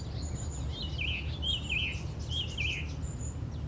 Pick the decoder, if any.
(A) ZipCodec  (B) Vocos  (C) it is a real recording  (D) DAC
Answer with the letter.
C